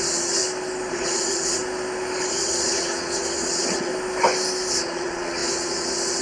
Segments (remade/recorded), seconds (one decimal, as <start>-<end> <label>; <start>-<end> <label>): 0.0-0.4 remade; 0.4-0.9 recorded; 0.9-1.6 remade; 1.6-2.3 recorded; 2.3-3.9 remade; 3.9-4.7 recorded; 4.7-6.2 remade